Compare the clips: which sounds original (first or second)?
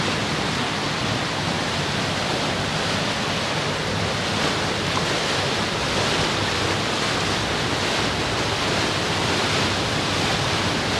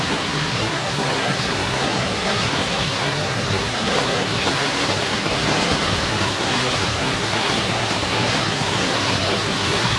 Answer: first